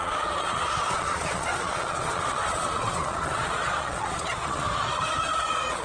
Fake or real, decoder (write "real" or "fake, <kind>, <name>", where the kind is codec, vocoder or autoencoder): fake, vocoder, Vocos